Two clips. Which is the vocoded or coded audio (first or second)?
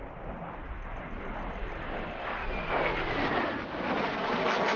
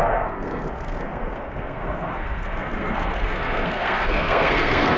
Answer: second